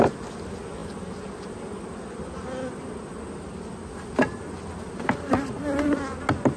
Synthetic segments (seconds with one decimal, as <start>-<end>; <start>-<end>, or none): none